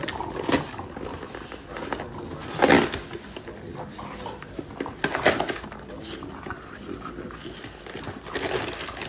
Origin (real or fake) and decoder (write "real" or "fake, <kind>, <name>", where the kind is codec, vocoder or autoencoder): real